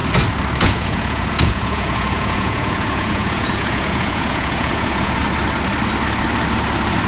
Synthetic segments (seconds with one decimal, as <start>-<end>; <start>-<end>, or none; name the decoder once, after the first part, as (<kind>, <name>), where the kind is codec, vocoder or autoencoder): 0.6-5.2 (vocoder, Vocos)